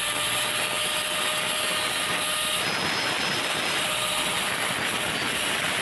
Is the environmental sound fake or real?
real